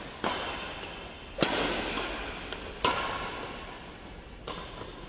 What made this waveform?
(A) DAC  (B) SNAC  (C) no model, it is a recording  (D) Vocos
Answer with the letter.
C